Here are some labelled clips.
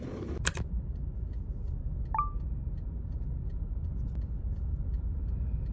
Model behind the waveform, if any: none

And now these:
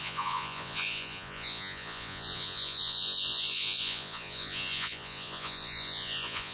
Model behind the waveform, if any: vocoder, Vocos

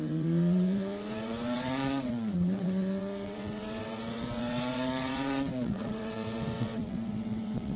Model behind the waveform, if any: vocoder, WaveNeXt